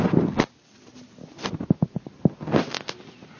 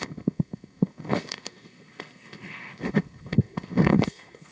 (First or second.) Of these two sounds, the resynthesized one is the second